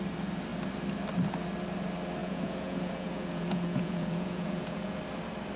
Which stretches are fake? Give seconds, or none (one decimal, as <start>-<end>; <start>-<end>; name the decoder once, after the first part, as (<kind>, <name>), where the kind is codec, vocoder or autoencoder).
2.2-5.0 (vocoder, Vocos)